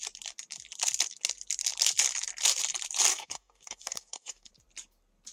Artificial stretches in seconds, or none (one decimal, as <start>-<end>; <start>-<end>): 3.1-4.5